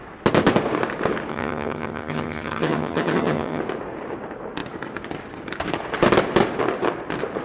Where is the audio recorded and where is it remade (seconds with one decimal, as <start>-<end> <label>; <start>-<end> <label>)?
0.0-1.3 recorded; 1.3-3.6 remade; 3.6-7.4 recorded